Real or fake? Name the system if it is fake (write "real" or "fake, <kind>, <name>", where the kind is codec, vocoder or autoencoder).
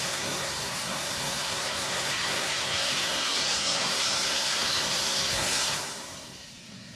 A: fake, codec, SNAC